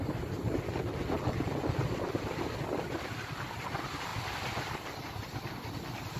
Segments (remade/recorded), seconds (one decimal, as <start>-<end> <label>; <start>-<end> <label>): 0.0-6.2 recorded